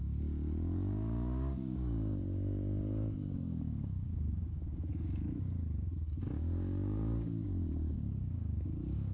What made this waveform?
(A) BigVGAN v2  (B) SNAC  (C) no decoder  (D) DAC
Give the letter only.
D